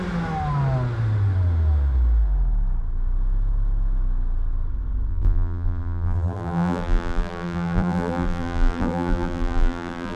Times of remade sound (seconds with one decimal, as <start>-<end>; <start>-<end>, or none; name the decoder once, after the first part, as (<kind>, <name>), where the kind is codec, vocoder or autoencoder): 5.1-10.2 (vocoder, BigVGAN v2)